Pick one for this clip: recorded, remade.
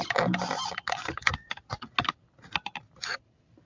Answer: recorded